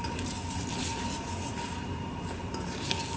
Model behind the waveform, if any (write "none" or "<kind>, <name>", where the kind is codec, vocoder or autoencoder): none